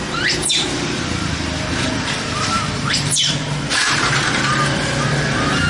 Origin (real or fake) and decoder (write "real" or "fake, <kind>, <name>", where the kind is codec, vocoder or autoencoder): fake, vocoder, BigVGAN v2